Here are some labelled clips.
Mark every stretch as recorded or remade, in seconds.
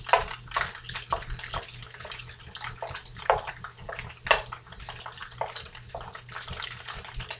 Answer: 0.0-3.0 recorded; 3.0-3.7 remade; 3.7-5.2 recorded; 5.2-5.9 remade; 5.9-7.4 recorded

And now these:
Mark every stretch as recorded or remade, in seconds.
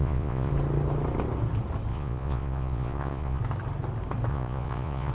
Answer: 0.0-0.5 remade; 0.5-1.9 recorded; 1.9-3.4 remade; 3.4-4.3 recorded; 4.3-5.1 remade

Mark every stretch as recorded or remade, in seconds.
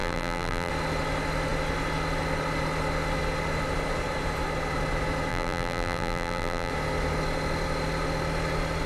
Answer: 0.0-0.7 remade; 0.7-5.3 recorded; 5.3-6.7 remade; 6.7-8.9 recorded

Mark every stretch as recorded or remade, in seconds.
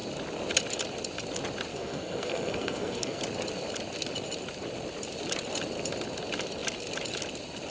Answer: 0.0-1.7 recorded; 1.7-3.2 remade; 3.2-7.7 recorded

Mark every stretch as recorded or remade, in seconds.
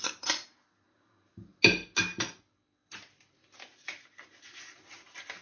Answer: 0.0-5.4 recorded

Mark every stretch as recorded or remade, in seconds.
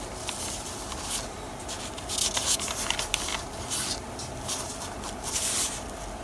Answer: 0.0-6.2 recorded